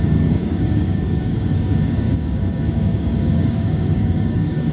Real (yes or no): no